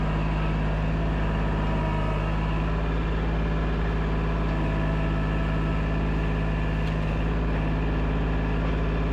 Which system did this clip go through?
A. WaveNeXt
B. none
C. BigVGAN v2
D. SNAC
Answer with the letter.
B